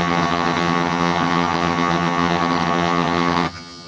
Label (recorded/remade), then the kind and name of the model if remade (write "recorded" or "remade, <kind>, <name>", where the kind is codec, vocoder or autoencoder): remade, vocoder, HiFi-GAN